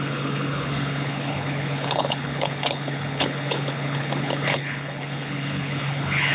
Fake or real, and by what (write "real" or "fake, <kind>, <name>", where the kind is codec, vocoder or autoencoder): fake, codec, HILCodec